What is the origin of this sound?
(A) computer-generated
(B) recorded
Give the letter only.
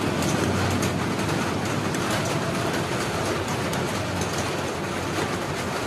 B